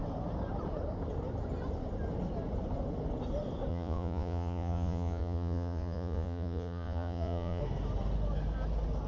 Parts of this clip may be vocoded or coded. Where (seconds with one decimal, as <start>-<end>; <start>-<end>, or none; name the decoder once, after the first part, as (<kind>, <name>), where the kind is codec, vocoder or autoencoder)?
3.7-7.6 (vocoder, Vocos)